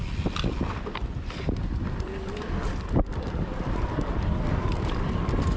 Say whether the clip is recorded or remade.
recorded